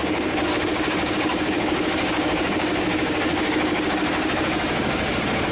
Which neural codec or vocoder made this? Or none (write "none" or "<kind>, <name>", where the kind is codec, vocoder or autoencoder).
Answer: codec, DAC